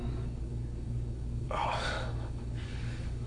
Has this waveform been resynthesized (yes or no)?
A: yes